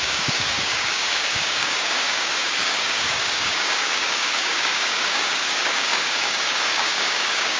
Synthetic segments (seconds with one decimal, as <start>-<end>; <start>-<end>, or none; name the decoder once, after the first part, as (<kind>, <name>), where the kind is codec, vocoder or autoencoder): 0.0-7.6 (codec, DAC)